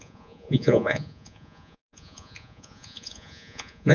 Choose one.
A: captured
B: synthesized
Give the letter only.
B